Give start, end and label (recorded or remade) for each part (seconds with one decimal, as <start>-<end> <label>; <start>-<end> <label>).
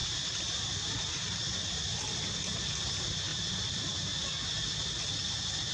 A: 0.0-5.7 recorded